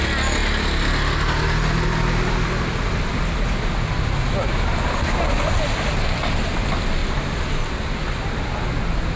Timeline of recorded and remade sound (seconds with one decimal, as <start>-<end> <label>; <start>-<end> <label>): 0.0-9.2 recorded